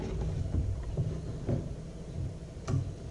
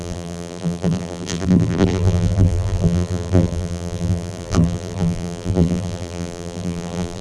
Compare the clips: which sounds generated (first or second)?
second